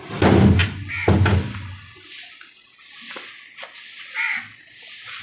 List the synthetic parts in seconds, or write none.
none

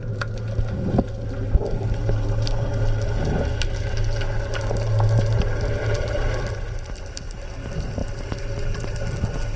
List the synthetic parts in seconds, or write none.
none

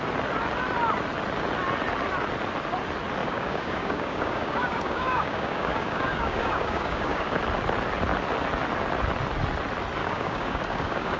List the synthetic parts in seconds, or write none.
3.2-7.4 (codec, DAC); 10.0-11.2

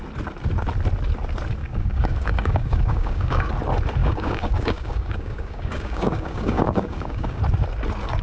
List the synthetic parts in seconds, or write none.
1.6-3.5 (codec, DAC); 4.0-7.4

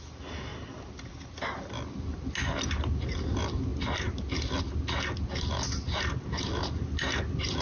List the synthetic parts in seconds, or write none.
none

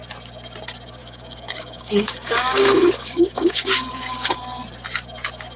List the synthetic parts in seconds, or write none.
1.0-4.4 (codec, DAC)